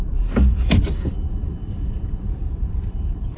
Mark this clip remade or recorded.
remade